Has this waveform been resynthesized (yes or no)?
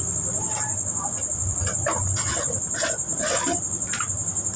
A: no